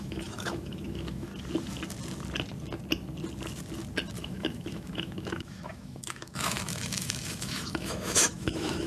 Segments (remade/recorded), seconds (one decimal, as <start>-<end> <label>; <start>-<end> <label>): 0.0-1.3 remade; 1.3-4.2 recorded; 4.2-8.9 remade